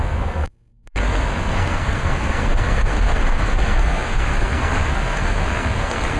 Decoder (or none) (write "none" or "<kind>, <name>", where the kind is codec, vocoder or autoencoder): codec, SNAC